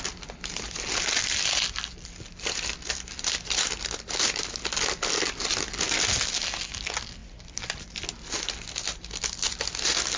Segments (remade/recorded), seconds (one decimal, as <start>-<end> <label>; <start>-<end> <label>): 0.0-10.2 recorded